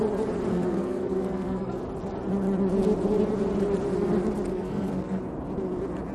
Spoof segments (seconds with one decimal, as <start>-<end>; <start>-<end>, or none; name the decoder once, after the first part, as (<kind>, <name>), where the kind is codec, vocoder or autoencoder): 0.5-1.8 (codec, SNAC); 4.5-5.2